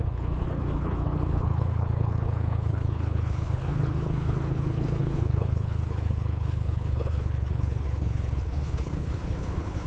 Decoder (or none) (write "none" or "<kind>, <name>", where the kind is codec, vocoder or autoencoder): codec, HILCodec